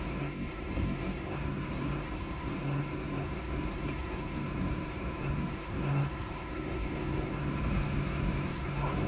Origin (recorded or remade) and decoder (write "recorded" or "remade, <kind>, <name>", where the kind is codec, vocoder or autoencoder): remade, codec, SNAC